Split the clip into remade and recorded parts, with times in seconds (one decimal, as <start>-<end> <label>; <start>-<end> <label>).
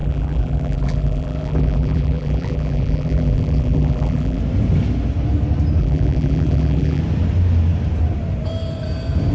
0.0-4.4 remade; 4.4-5.8 recorded; 5.8-7.0 remade; 7.0-9.3 recorded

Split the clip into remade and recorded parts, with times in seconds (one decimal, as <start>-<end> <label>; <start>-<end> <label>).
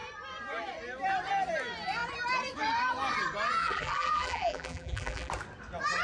0.0-3.6 recorded; 3.6-5.3 remade; 5.3-6.0 recorded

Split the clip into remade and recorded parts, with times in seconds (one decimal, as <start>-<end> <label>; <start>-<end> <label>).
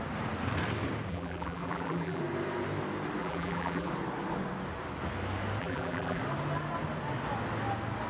0.0-1.1 recorded; 1.1-2.2 remade; 2.2-3.2 recorded; 3.2-3.9 remade; 3.9-5.6 recorded; 5.6-6.2 remade; 6.2-8.1 recorded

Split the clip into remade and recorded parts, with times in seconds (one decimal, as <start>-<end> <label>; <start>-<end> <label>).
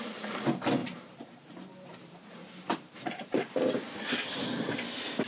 0.0-0.8 recorded; 0.8-4.0 remade; 4.0-5.3 recorded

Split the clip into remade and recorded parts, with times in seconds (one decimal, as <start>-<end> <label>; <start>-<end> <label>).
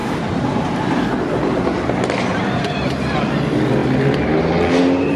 0.0-2.3 recorded; 2.3-3.2 remade; 3.2-5.2 recorded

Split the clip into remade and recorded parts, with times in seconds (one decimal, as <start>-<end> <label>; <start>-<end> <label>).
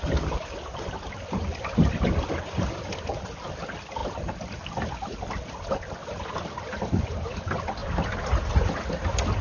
0.0-4.0 recorded; 4.0-5.7 remade; 5.7-9.4 recorded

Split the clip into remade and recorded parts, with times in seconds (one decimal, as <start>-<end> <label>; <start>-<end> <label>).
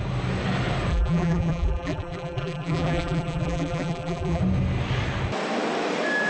0.0-0.9 recorded; 0.9-4.4 remade; 4.4-6.3 recorded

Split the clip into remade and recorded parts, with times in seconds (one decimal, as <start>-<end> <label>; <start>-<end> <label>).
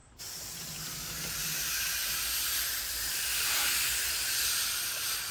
0.0-0.8 remade; 0.8-1.4 recorded; 1.4-3.6 remade; 3.6-5.3 recorded